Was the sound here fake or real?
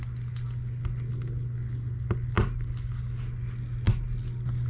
real